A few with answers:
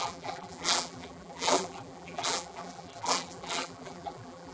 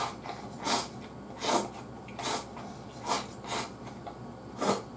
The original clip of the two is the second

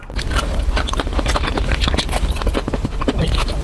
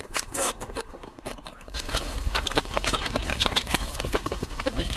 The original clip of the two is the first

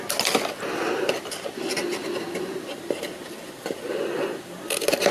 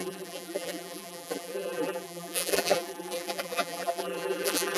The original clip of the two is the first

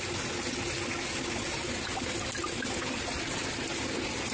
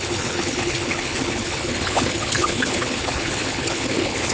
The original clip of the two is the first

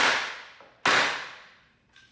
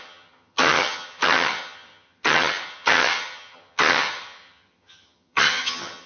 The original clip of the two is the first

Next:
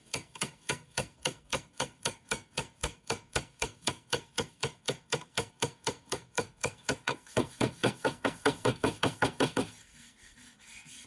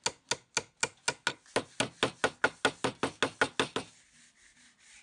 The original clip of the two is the second